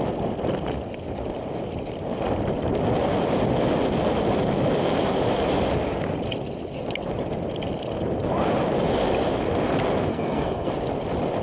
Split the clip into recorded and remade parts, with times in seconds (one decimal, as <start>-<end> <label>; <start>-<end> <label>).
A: 0.0-10.1 recorded; 10.1-10.7 remade; 10.7-11.4 recorded